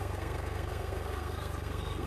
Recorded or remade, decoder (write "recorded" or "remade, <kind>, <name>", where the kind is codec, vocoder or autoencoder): remade, codec, SNAC